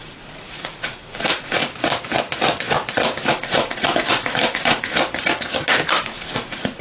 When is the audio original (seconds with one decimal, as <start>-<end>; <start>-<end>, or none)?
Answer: 1.6-3.3; 4.9-6.0